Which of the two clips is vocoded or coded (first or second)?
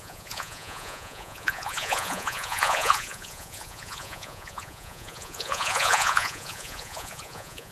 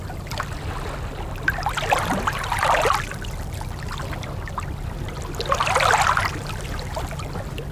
first